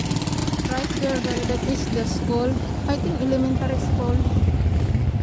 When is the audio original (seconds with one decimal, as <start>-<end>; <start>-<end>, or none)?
1.6-4.7